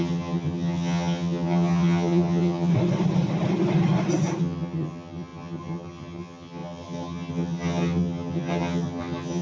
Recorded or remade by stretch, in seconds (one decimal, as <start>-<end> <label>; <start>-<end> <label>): 0.0-2.7 remade; 2.7-4.4 recorded; 4.4-9.4 remade